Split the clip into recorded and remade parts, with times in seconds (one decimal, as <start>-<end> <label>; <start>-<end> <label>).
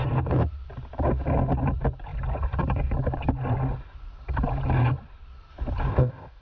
0.0-5.9 recorded; 5.9-6.4 remade